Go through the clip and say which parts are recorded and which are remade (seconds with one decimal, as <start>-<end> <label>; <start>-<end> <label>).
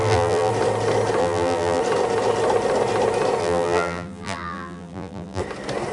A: 0.0-0.5 remade; 0.5-1.2 recorded; 1.2-1.8 remade; 1.8-3.4 recorded; 3.4-5.4 remade; 5.4-5.9 recorded